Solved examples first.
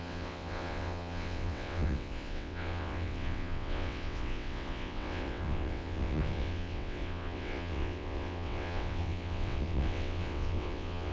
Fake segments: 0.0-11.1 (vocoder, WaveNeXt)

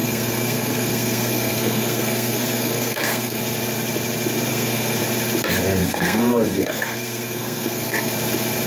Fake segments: 0.0-3.4 (codec, SNAC); 4.5-5.0; 5.8-8.1

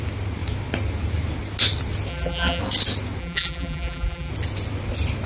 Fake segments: 2.1-2.6 (vocoder, BigVGAN v2); 3.2-4.3

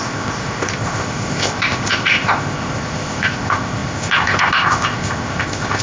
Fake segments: 0.0-5.8 (codec, ZipCodec)

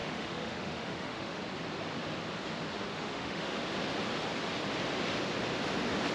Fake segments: 0.0-1.4 (autoencoder, DAC-VAE); 2.9-3.6

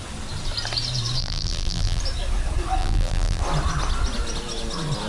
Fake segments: 1.2-2.0 (vocoder, BigVGAN v2); 2.8-3.4

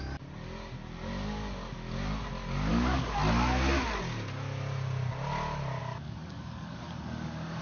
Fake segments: 2.7-3.2 (codec, DAC); 5.8-7.6